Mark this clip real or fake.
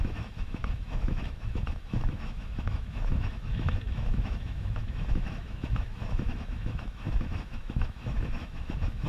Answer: fake